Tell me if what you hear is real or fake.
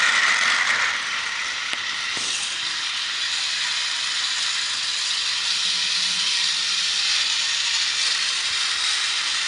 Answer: real